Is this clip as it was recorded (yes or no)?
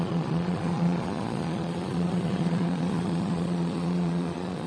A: no